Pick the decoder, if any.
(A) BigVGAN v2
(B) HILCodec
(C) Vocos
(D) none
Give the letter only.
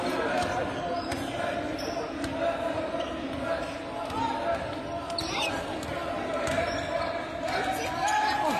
D